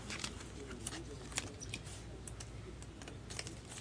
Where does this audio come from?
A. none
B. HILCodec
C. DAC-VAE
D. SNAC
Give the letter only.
A